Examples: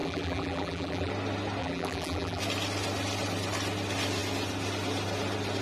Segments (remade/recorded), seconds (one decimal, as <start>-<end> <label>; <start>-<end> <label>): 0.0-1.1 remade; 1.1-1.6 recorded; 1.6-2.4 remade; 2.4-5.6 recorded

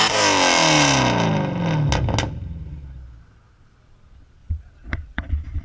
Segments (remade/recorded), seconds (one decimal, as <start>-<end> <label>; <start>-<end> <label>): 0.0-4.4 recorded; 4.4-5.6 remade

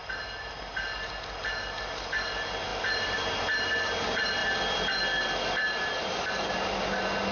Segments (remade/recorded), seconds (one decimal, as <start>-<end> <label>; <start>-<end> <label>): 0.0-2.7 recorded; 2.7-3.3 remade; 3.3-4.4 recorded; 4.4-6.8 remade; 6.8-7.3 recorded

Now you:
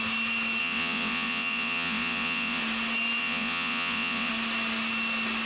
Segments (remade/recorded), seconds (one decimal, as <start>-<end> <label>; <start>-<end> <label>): 0.0-0.6 recorded; 0.6-2.6 remade; 2.6-3.2 recorded; 3.2-4.3 remade; 4.3-5.5 recorded